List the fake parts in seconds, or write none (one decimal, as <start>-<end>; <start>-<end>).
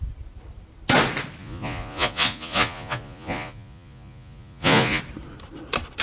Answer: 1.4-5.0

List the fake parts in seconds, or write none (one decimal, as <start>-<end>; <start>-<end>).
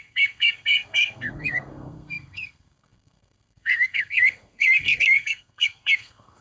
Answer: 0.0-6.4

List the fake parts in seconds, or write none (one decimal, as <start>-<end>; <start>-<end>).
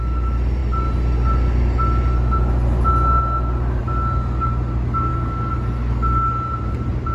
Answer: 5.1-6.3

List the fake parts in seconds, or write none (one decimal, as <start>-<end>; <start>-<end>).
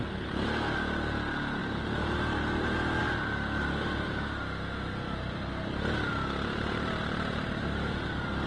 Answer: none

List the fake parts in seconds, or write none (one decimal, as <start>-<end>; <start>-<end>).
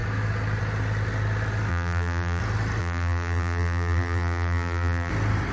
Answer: 1.7-2.4; 2.8-5.1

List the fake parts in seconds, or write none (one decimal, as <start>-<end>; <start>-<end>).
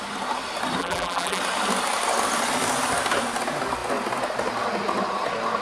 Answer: 0.8-1.4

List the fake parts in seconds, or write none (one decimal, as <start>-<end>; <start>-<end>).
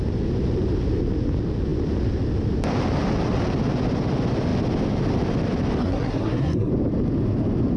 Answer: 5.8-6.7